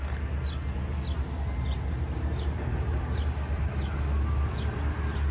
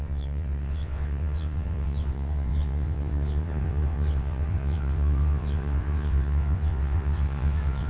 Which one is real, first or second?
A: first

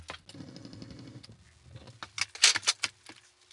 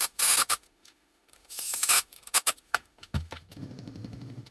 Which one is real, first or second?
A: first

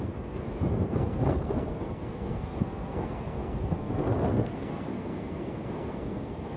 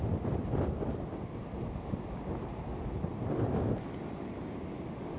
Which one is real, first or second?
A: second